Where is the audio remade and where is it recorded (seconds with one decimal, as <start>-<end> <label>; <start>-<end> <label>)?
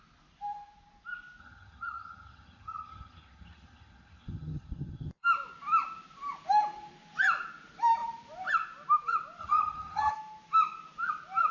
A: 0.0-1.4 recorded; 1.4-5.1 remade; 5.1-9.4 recorded; 9.4-10.1 remade; 10.1-11.5 recorded